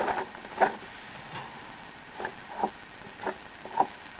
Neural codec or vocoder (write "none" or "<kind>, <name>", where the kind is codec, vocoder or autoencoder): none